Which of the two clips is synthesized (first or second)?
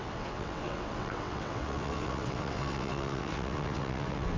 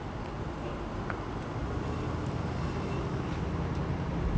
first